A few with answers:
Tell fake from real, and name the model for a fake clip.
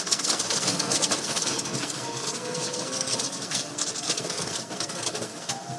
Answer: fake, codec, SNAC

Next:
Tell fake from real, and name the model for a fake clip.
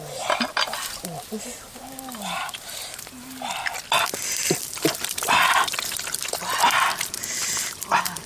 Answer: real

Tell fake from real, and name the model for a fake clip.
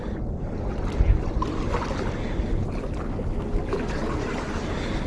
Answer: real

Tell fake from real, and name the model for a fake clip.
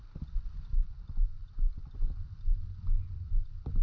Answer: real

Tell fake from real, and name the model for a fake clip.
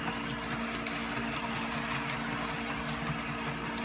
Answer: real